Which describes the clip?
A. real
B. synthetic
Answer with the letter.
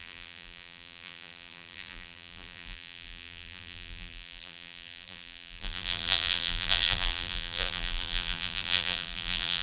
B